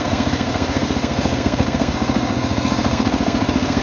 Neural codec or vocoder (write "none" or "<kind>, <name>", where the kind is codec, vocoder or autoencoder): codec, SNAC